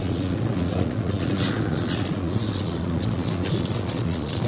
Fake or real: fake